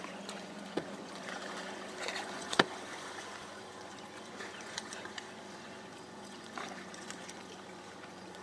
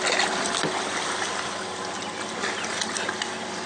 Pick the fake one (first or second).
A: first